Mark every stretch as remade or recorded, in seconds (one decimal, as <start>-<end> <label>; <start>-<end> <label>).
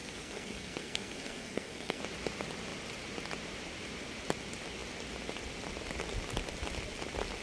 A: 0.0-2.0 remade; 2.0-7.4 recorded